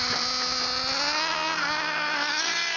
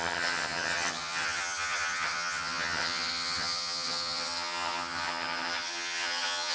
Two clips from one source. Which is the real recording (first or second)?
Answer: first